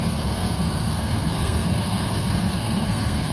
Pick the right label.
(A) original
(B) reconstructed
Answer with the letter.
B